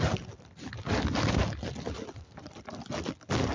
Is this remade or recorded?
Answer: recorded